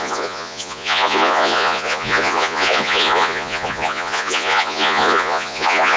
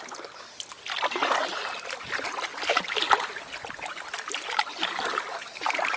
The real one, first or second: second